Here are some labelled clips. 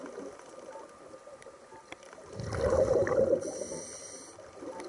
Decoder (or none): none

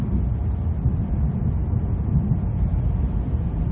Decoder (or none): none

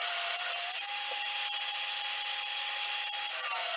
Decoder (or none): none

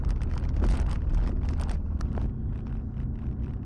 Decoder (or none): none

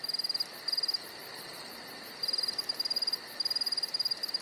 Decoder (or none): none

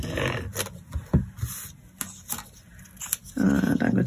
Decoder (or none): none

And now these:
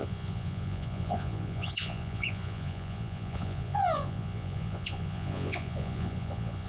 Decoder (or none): vocoder, Vocos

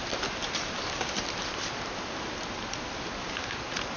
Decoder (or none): vocoder, BigVGAN v2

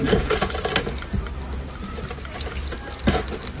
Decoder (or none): none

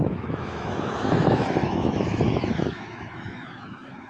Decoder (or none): autoencoder, DAC-VAE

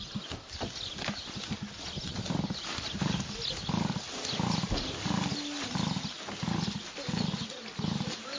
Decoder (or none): none